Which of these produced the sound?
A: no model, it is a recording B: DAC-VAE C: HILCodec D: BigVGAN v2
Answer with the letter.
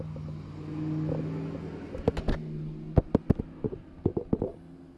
A